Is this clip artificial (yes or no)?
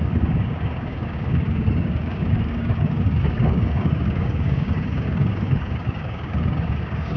yes